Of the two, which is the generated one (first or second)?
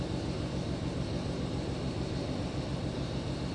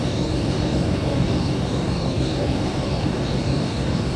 second